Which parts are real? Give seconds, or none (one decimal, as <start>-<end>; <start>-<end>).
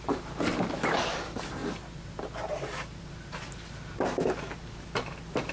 0.0-5.5